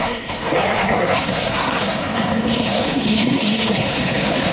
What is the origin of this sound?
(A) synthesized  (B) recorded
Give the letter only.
A